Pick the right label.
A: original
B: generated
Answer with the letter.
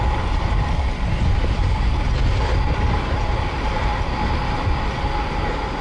A